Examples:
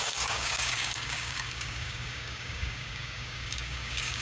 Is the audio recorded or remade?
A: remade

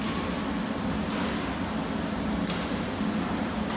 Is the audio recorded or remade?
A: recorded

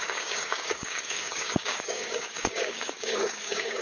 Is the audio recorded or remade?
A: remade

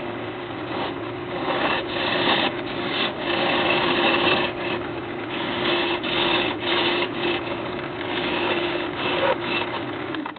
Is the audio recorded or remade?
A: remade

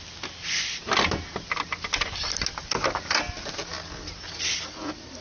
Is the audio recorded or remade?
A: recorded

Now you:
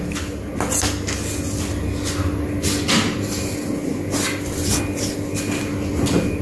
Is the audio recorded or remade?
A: recorded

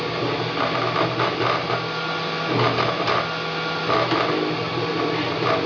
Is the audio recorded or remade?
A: recorded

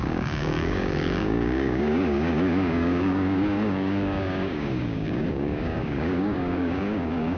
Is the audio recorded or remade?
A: remade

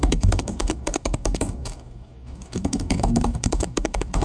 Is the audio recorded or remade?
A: remade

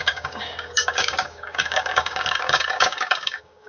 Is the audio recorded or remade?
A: remade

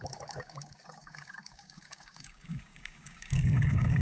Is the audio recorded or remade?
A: remade